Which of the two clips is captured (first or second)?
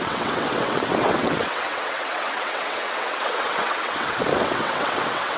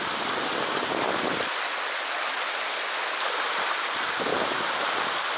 second